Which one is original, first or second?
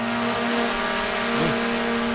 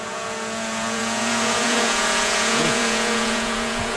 first